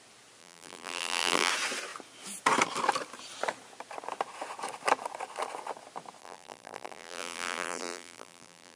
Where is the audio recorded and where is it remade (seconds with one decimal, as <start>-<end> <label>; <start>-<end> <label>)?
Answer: 0.0-0.4 recorded; 0.4-1.5 remade; 1.5-6.2 recorded; 6.2-8.8 remade